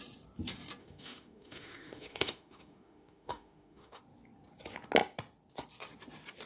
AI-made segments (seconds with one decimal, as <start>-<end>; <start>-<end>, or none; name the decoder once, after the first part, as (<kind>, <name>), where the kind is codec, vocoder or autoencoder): 0.8-4.0 (autoencoder, DAC-VAE)